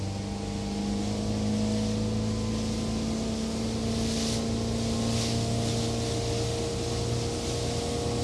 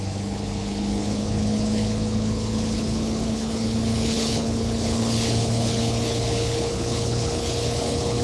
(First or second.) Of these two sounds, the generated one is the second